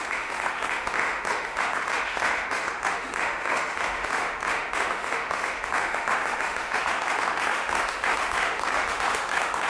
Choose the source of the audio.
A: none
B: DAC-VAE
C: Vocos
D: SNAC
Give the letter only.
B